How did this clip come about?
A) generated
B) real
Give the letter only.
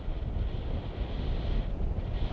A